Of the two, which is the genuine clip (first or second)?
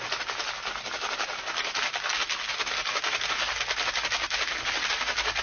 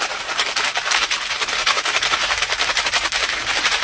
first